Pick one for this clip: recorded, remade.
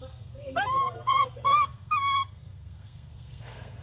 remade